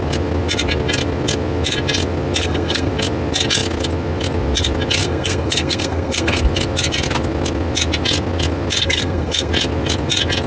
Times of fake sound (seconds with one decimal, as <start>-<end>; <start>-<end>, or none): 2.4-2.9; 5.0-6.4; 8.8-9.5